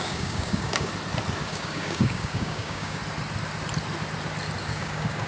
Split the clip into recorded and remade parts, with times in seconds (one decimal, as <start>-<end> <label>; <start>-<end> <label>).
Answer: 0.0-0.9 remade; 0.9-1.4 recorded; 1.4-3.0 remade; 3.0-4.6 recorded; 4.6-5.3 remade